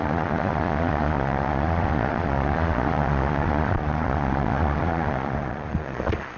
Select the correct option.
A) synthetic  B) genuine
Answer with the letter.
A